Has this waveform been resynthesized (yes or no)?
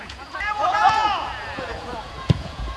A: yes